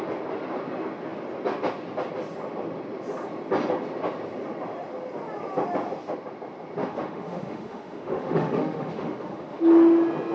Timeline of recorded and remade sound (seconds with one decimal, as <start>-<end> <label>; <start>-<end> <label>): 0.0-6.8 recorded; 6.8-9.6 remade; 9.6-10.3 recorded